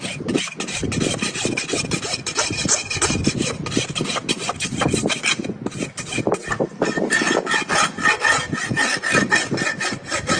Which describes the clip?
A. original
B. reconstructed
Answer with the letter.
A